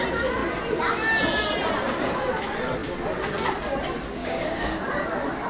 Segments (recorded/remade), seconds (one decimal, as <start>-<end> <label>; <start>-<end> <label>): 0.0-4.2 recorded; 4.2-4.8 remade; 4.8-5.5 recorded